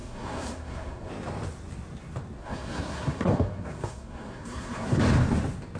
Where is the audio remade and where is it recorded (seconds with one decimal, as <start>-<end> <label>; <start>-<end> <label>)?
0.0-1.1 remade; 1.1-2.4 recorded; 2.4-5.0 remade; 5.0-5.8 recorded